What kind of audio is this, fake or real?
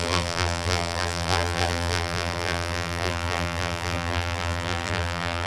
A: fake